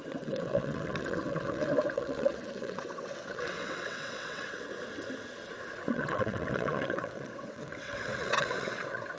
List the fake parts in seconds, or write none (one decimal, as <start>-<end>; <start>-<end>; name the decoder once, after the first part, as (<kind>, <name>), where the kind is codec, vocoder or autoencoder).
0.0-4.7 (vocoder, WaveNeXt); 5.9-9.2

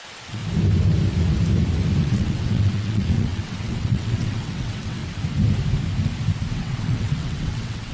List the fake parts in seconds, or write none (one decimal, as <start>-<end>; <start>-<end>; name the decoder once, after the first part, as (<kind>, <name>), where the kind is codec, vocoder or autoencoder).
0.0-0.4 (vocoder, WaveNeXt); 2.0-5.0; 6.5-7.9